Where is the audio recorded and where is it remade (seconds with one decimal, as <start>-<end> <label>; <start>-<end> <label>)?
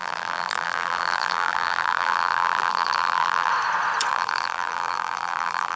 0.0-3.5 remade; 3.5-4.1 recorded; 4.1-5.8 remade